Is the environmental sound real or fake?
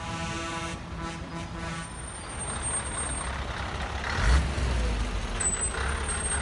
real